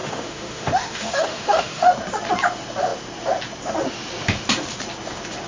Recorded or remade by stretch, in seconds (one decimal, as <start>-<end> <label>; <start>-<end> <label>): 0.0-1.9 remade; 1.9-5.5 recorded